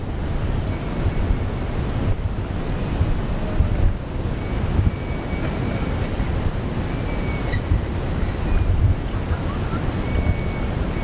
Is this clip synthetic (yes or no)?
no